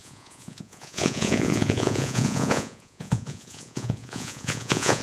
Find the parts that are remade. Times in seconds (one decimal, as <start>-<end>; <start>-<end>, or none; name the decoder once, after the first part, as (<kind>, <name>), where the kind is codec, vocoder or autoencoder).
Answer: 0.0-5.0 (vocoder, Vocos)